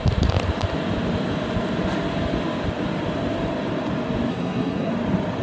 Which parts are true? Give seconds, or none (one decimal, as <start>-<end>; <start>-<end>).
0.0-4.3; 4.9-5.4